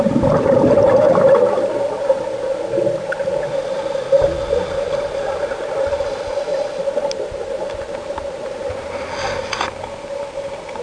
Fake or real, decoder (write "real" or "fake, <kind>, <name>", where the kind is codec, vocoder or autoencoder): real